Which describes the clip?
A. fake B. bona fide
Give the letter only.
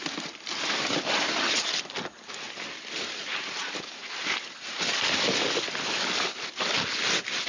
B